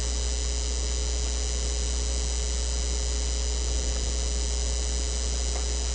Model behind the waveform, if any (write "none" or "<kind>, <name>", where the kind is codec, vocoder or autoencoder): none